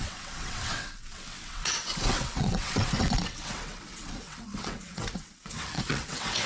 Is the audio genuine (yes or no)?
no